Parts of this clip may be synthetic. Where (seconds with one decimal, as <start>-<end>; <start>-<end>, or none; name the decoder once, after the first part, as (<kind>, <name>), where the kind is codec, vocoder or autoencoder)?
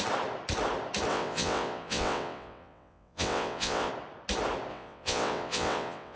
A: 1.1-3.9 (vocoder, WaveNeXt); 4.7-6.2